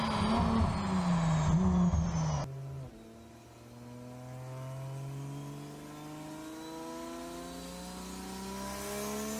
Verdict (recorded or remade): recorded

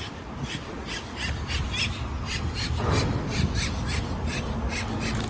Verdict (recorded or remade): recorded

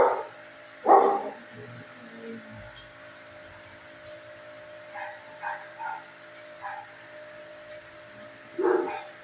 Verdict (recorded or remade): recorded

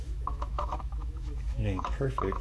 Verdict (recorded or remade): remade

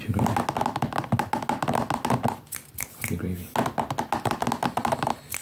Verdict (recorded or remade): recorded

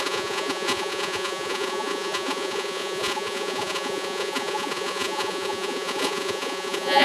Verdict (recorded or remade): remade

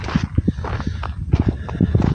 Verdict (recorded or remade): recorded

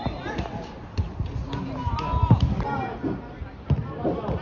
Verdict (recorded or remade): recorded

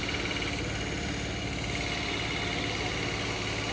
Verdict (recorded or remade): recorded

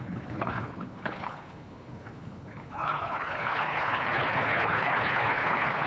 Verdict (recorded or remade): remade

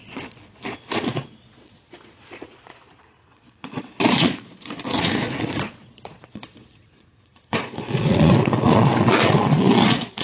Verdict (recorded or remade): remade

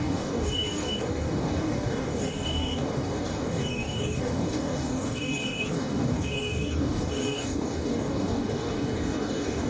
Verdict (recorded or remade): remade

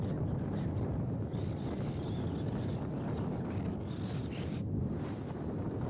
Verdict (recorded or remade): recorded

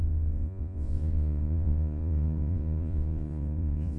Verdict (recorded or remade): remade